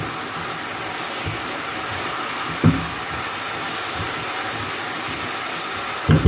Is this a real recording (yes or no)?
yes